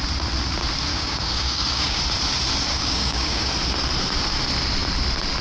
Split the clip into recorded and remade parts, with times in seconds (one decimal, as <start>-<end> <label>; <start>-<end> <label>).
0.0-0.9 recorded; 0.9-2.0 remade; 2.0-2.7 recorded; 2.7-3.5 remade; 3.5-5.4 recorded